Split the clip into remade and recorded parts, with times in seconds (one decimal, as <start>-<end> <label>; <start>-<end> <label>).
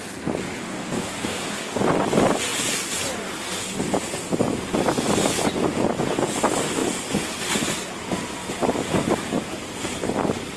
0.0-0.6 recorded; 0.6-1.8 remade; 1.8-10.6 recorded